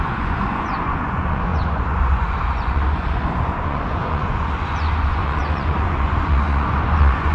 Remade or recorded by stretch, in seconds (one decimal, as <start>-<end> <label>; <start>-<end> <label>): 0.0-7.3 remade